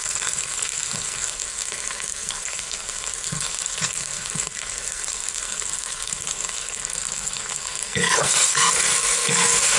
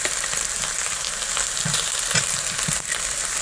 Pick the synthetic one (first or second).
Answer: first